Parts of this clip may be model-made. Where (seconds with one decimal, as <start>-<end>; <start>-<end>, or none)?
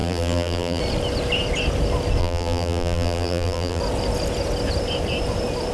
0.0-0.8; 2.2-3.8